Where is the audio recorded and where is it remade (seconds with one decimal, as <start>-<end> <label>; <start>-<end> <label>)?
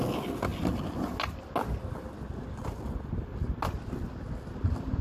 0.0-5.0 recorded